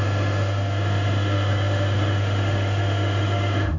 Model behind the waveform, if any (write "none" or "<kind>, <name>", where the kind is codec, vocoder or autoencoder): autoencoder, DAC-VAE